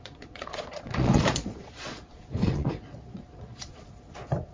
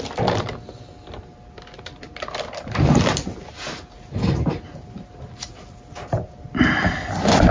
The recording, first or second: second